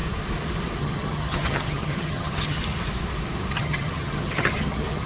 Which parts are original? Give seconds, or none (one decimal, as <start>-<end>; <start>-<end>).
0.0-0.8; 2.6-3.5